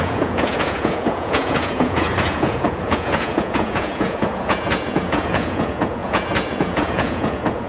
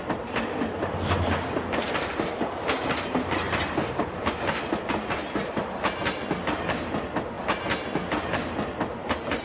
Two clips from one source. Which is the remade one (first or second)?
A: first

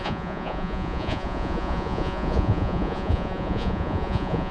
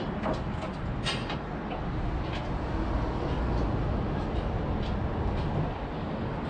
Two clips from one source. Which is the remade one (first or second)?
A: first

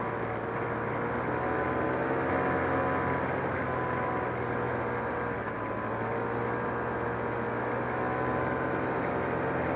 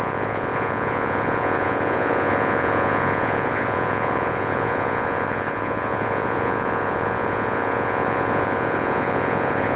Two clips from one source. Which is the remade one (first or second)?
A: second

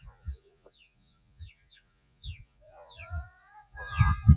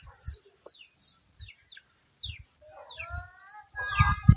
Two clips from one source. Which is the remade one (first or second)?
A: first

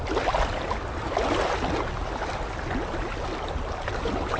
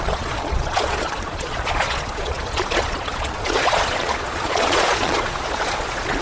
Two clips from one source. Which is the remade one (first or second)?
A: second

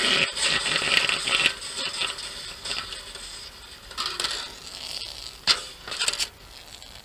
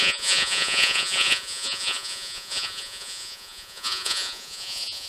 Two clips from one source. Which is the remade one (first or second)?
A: second